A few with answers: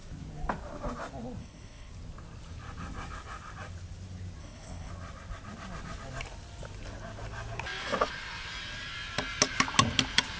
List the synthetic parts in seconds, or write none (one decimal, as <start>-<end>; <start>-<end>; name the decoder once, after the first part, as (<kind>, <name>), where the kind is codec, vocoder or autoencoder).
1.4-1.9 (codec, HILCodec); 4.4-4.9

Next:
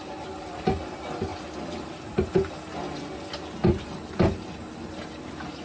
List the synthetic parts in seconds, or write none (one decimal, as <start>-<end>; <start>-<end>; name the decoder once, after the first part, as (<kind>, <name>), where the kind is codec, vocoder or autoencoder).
none

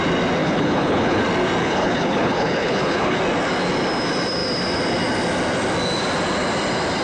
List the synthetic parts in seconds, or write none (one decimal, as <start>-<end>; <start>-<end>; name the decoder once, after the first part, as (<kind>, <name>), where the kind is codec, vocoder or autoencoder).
0.4-1.2 (codec, HILCodec); 1.6-3.2

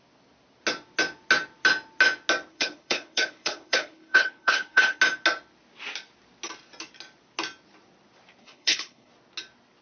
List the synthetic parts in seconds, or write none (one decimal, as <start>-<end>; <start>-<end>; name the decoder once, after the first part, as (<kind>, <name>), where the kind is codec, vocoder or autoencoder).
2.5-5.0 (codec, HILCodec); 8.4-9.1

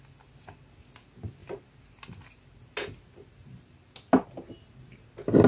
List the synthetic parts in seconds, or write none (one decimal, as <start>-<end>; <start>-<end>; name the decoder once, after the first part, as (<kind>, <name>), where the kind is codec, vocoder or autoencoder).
none

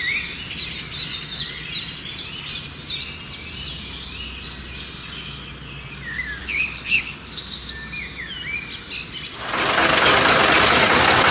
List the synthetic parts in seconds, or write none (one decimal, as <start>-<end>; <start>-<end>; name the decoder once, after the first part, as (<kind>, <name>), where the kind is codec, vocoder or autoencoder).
6.4-7.3 (codec, HILCodec)

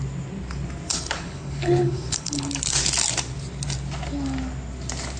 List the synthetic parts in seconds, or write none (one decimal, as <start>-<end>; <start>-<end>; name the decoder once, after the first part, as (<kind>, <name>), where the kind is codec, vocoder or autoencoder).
0.9-2.5 (codec, HILCodec)